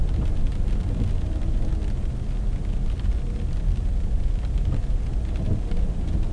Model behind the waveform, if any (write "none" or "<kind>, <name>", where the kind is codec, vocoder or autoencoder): none